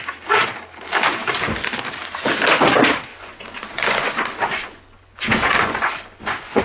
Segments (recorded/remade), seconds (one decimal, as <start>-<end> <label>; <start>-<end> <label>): 0.0-3.1 recorded; 3.1-6.6 remade